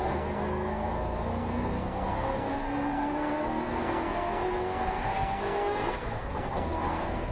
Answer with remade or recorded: remade